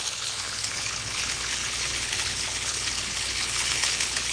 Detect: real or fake fake